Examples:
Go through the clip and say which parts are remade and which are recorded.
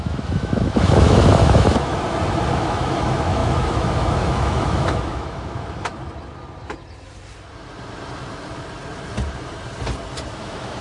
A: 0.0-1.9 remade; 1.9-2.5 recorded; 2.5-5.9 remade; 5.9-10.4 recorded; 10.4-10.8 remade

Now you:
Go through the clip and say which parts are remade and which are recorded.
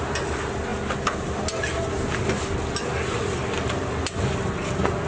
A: 0.0-5.1 recorded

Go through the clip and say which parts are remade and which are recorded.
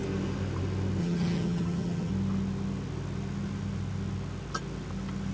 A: 0.0-1.0 recorded; 1.0-2.1 remade; 2.1-5.3 recorded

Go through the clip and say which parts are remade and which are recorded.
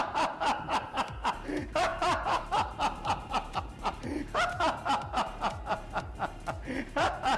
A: 0.0-6.2 remade; 6.2-6.8 recorded; 6.8-7.4 remade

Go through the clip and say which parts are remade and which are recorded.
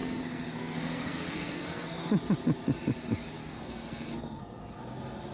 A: 0.0-2.1 remade; 2.1-3.4 recorded; 3.4-4.6 remade; 4.6-5.3 recorded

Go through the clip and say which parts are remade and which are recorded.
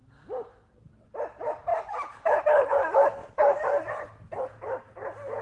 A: 0.0-1.7 recorded; 1.7-2.7 remade; 2.7-3.2 recorded; 3.2-3.9 remade; 3.9-5.4 recorded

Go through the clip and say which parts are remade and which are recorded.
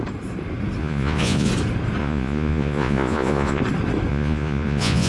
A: 0.0-0.8 recorded; 0.8-1.5 remade; 1.5-2.0 recorded; 2.0-3.6 remade; 3.6-4.1 recorded; 4.1-5.1 remade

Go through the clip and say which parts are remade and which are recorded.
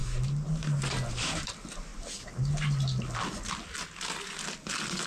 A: 0.0-1.1 recorded; 1.1-1.9 remade; 1.9-5.1 recorded